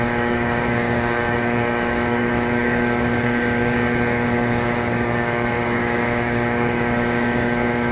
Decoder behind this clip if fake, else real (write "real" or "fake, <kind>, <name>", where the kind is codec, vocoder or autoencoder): fake, codec, DAC